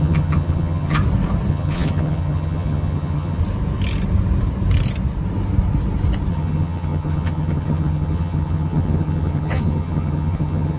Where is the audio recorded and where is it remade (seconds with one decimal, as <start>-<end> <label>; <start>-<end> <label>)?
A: 0.0-1.0 remade; 1.0-1.5 recorded; 1.5-3.4 remade; 3.4-6.3 recorded; 6.3-10.8 remade